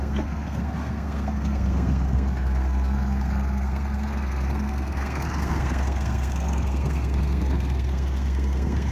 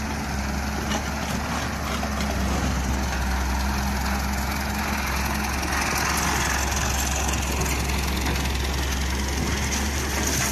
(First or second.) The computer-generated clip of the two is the first